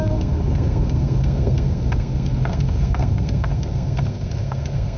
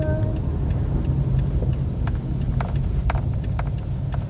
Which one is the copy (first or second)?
first